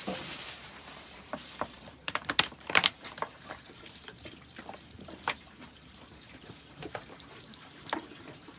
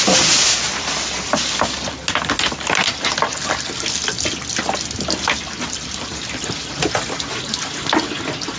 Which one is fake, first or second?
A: first